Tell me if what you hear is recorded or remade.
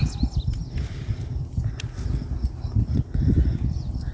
recorded